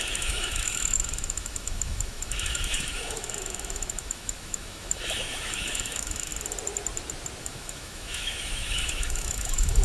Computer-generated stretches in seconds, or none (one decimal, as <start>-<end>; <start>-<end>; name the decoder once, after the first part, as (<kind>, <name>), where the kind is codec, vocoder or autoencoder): 0.0-6.3 (autoencoder, DAC-VAE); 7.4-9.8